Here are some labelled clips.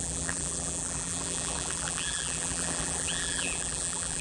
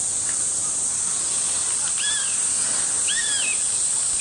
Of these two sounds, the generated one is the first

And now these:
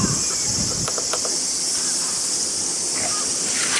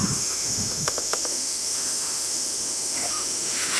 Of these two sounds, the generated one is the second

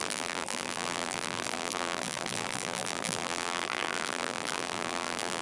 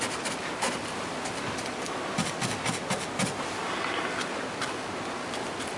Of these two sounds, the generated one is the first